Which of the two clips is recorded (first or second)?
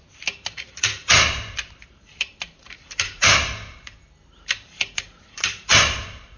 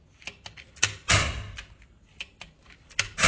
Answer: second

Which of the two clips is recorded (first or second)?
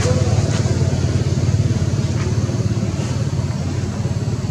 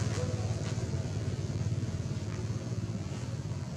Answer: first